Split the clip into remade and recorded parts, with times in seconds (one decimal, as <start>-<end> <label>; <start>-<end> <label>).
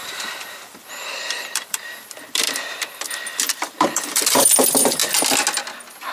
0.0-5.0 remade; 5.0-6.1 recorded